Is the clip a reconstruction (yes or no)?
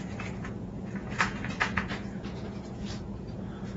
yes